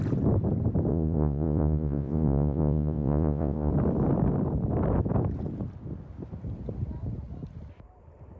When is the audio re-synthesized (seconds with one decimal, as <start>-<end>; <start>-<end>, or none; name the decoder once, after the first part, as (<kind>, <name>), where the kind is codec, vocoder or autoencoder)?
0.9-3.7 (vocoder, Vocos)